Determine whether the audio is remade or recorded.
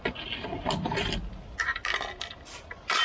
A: recorded